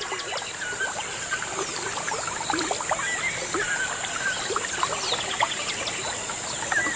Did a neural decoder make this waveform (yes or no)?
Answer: no